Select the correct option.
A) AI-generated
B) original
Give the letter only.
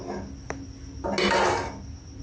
B